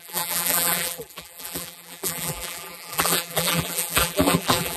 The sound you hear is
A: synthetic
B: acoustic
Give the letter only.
A